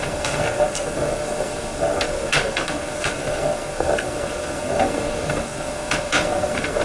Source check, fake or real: fake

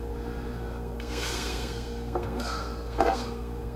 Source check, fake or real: fake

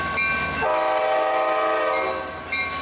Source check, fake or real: real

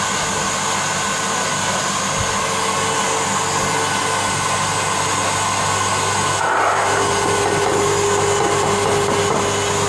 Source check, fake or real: real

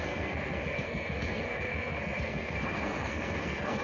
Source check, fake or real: fake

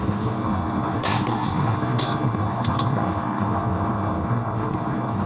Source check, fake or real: fake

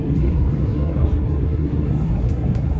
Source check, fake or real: fake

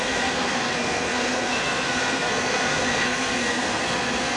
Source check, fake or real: fake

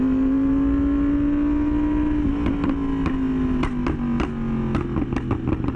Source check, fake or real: real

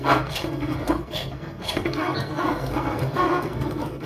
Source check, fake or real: fake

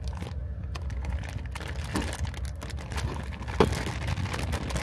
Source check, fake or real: real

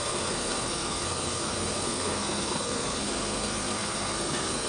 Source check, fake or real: fake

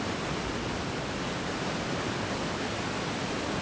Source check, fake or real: real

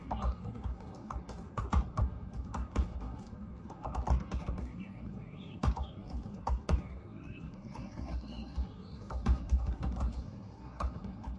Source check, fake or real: fake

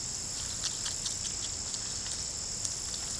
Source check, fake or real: real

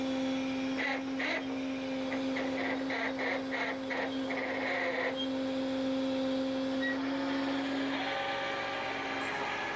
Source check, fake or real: real